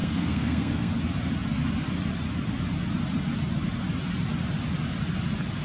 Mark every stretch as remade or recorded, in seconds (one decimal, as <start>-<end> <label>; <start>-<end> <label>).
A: 0.0-0.9 remade; 0.9-5.6 recorded